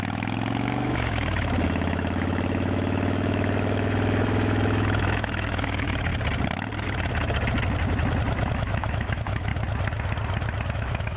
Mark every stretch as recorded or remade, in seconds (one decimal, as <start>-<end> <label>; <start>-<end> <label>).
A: 0.0-6.1 remade; 6.1-8.5 recorded; 8.5-9.5 remade; 9.5-10.7 recorded; 10.7-11.2 remade